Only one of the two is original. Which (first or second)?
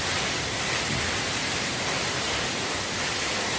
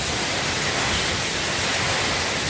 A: second